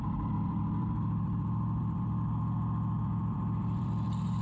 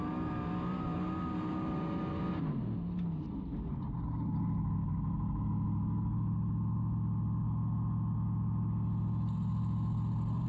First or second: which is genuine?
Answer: second